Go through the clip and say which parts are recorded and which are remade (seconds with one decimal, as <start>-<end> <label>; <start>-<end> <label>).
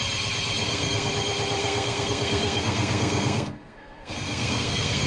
0.0-0.6 recorded; 0.6-1.1 remade; 1.1-1.6 recorded; 1.6-5.1 remade